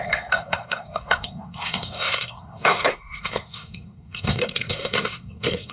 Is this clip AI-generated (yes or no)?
yes